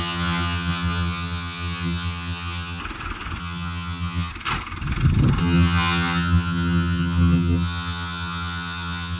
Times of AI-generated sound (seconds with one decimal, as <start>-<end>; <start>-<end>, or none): 0.0-2.8; 3.4-4.3; 5.4-9.2